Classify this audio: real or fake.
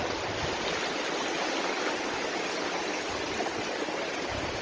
real